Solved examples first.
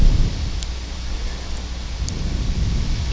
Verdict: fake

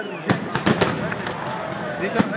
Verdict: real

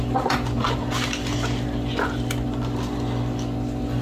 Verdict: real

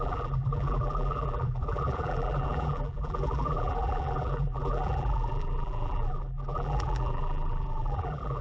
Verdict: fake